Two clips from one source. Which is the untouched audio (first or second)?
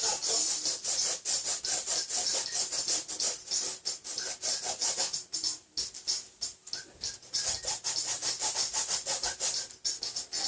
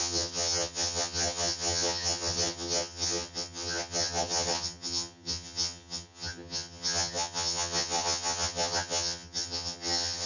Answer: first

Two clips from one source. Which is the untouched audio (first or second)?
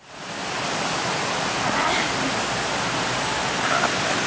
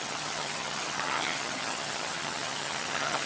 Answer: first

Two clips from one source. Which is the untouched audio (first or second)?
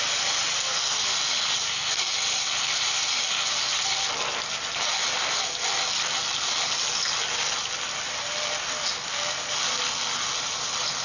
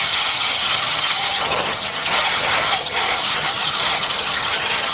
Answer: first